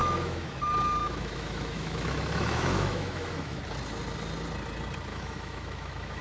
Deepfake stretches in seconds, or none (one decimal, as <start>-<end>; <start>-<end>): 0.0-0.6; 1.0-3.6; 5.1-6.2